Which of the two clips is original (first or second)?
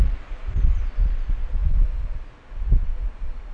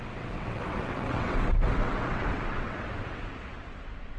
first